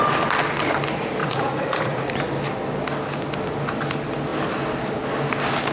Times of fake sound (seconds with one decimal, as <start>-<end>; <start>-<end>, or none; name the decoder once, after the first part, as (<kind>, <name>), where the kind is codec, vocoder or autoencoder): 1.2-2.1 (vocoder, Vocos)